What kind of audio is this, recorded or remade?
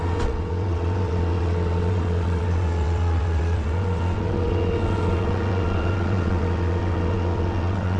remade